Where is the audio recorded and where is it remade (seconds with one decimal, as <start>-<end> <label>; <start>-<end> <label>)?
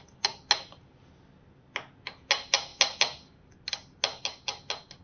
0.0-5.0 recorded